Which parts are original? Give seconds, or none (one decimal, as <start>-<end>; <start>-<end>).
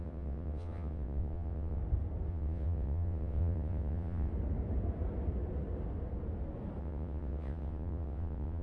1.8-2.3; 4.3-6.8